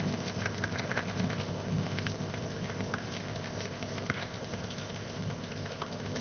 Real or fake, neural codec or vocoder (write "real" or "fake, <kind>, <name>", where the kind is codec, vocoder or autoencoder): fake, codec, ZipCodec